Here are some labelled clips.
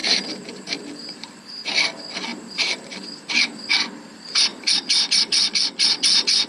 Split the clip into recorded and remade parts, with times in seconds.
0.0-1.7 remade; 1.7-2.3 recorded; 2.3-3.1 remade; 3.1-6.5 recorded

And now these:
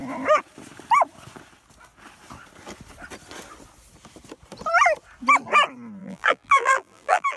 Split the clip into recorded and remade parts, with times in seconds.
0.0-6.0 recorded; 6.0-7.4 remade

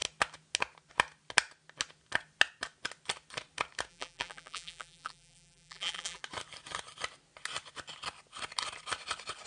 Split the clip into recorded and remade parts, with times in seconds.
0.0-3.9 recorded; 3.9-6.2 remade; 6.2-9.5 recorded

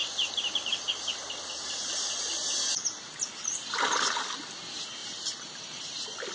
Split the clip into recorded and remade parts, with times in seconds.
0.0-3.1 remade; 3.1-5.0 recorded; 5.0-5.6 remade; 5.6-6.3 recorded